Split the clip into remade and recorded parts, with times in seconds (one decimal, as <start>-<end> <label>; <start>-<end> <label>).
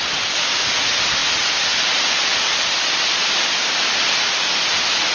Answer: 0.0-5.1 recorded